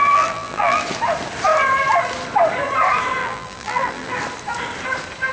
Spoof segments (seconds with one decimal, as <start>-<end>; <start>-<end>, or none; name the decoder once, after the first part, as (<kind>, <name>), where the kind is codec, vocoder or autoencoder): 0.0-0.8 (vocoder, BigVGAN v2); 3.2-4.1